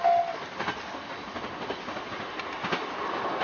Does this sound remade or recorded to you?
recorded